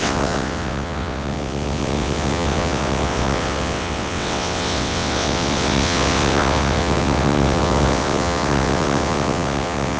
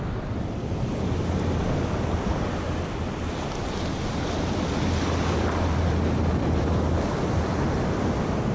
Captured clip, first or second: second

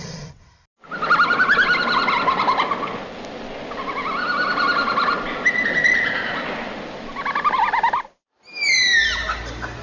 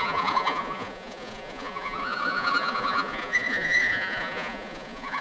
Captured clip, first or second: first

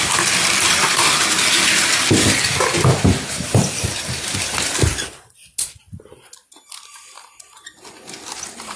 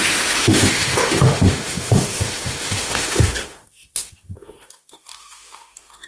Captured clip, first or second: first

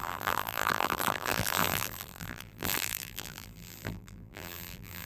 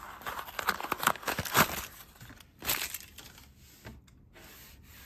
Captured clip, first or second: second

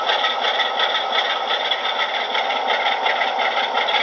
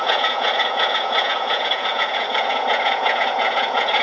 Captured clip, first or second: first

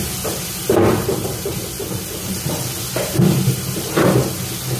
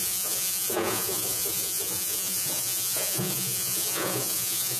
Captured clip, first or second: first